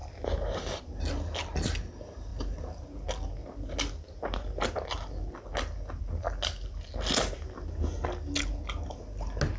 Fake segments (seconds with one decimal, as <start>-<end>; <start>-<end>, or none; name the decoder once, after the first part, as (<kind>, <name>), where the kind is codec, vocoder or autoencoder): none